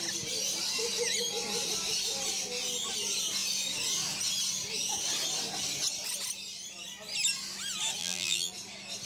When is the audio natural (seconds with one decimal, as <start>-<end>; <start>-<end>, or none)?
0.0-8.0; 8.5-9.1

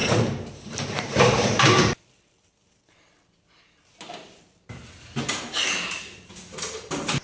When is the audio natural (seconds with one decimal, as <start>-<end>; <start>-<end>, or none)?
1.9-7.2

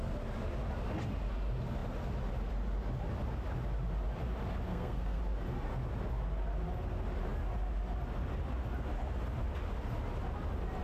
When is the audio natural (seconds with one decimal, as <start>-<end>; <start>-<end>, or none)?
0.0-4.7; 5.2-10.8

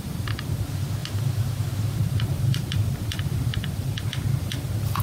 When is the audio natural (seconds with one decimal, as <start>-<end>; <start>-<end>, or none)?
0.0-1.0; 2.4-5.0

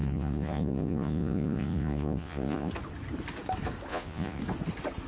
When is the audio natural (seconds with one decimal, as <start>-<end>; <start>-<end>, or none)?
2.7-3.9; 4.4-5.1